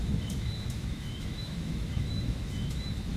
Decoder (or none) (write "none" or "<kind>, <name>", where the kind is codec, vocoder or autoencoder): autoencoder, DAC-VAE